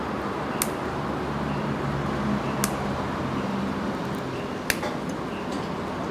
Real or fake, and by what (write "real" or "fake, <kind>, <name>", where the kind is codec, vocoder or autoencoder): real